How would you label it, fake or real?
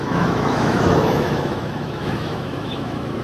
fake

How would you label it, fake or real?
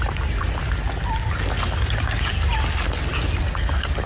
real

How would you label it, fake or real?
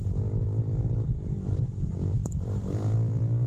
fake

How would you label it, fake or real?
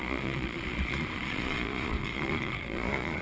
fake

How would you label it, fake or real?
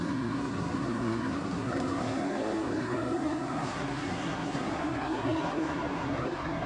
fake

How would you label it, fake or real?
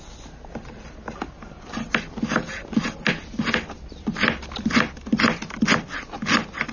real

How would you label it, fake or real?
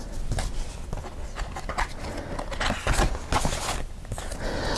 real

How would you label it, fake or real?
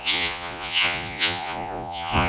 fake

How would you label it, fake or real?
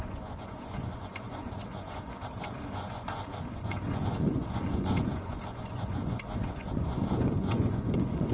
fake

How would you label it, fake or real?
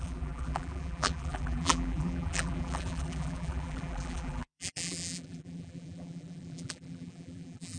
fake